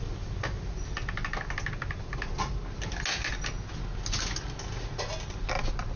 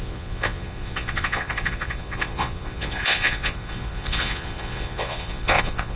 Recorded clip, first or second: first